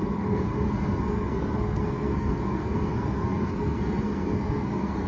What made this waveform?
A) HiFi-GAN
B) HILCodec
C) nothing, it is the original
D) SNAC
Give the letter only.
D